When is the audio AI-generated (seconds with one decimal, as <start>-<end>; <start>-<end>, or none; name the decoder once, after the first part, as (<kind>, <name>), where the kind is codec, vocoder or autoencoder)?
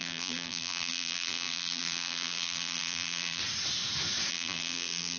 0.0-3.4 (vocoder, BigVGAN v2); 4.3-5.2